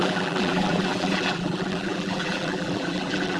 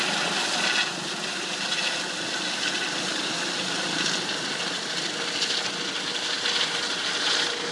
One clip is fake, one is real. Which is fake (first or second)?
first